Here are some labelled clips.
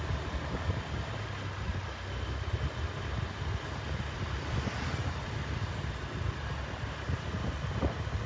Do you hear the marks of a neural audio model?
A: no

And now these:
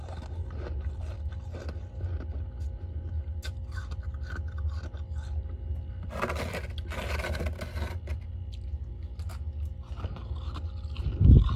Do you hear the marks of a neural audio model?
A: no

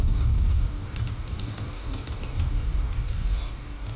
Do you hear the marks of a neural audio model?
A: yes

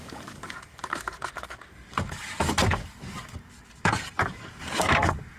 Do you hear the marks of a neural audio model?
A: yes